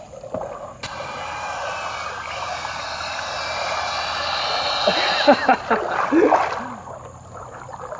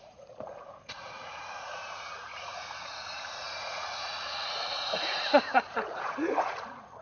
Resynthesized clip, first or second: second